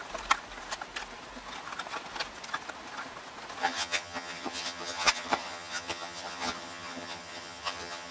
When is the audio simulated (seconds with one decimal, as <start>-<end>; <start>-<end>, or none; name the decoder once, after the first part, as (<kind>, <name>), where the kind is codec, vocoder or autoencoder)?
3.6-8.1 (vocoder, HiFi-GAN)